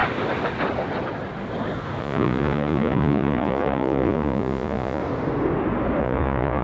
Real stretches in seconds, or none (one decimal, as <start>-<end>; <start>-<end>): 0.0-2.0; 5.0-6.0